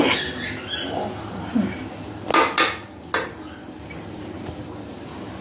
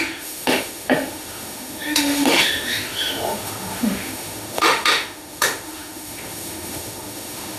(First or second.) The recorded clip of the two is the first